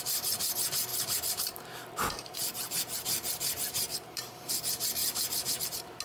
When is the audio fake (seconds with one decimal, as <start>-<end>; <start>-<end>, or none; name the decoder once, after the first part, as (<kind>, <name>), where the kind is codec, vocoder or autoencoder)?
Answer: 0.9-4.5 (vocoder, BigVGAN v2); 5.0-6.0